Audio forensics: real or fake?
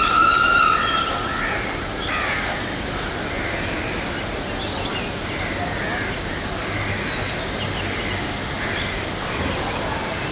real